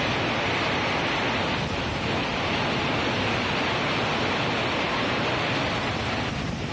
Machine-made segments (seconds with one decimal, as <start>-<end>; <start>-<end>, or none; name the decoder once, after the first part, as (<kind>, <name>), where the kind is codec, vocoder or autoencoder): none